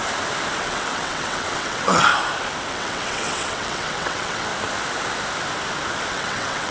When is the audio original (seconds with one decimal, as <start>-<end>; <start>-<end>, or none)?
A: 0.0-0.6; 2.1-2.7; 4.5-6.1